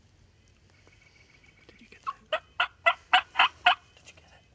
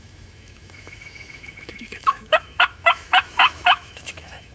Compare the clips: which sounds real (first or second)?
first